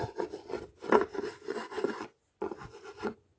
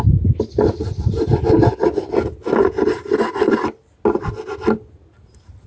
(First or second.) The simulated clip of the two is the first